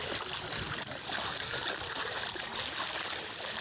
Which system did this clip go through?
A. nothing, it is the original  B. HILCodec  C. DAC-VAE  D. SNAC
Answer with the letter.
A